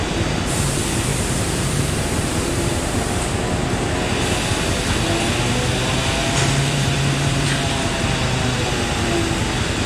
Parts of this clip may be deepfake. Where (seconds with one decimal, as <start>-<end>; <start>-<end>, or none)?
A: 1.1-3.3; 6.2-7.9